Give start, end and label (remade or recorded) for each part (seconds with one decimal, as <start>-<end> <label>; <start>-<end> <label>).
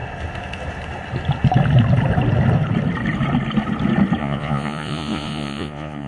0.0-4.2 recorded; 4.2-6.1 remade